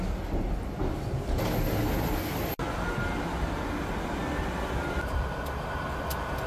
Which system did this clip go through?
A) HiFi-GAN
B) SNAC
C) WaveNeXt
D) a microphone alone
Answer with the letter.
D